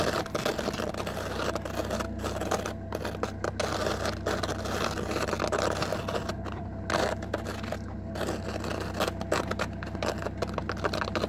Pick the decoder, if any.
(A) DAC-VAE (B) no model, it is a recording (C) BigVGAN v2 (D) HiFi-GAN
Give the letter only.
B